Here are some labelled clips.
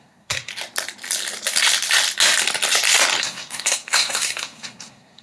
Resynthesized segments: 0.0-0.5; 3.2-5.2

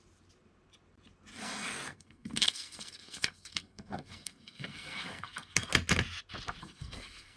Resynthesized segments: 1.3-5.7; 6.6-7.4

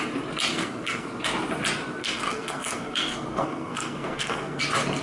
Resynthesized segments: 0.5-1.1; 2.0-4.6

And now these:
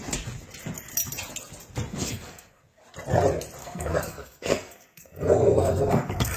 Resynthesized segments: 2.0-2.6; 3.6-6.4